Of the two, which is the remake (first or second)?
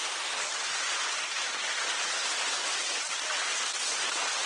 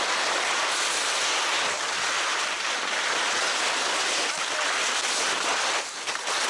first